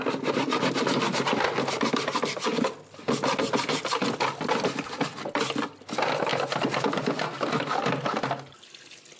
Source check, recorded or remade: recorded